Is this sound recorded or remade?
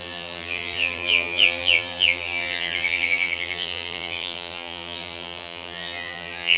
remade